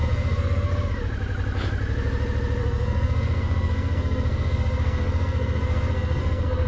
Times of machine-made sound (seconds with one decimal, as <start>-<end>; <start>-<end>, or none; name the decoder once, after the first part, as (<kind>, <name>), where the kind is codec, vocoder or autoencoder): 0.0-0.7 (codec, SNAC); 2.6-6.7